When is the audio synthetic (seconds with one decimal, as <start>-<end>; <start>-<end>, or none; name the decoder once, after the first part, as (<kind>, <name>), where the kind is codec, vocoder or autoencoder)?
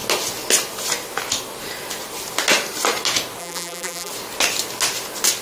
3.4-4.1 (vocoder, BigVGAN v2)